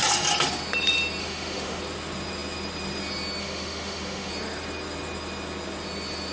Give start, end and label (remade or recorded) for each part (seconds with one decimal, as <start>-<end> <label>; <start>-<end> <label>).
0.0-1.2 recorded; 1.2-1.8 remade; 1.8-3.4 recorded; 3.4-4.3 remade; 4.3-6.3 recorded